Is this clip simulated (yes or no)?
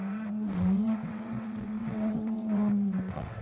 yes